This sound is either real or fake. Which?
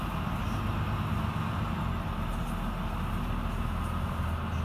real